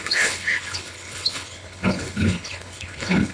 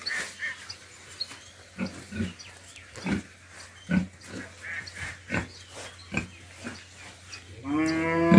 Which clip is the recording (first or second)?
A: second